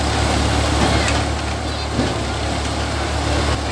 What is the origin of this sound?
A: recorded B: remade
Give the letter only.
A